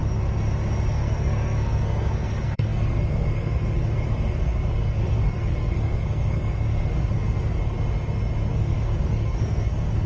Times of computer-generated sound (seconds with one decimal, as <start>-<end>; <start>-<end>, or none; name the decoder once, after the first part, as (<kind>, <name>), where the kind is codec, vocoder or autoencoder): 0.9-7.6 (codec, SNAC); 8.5-10.1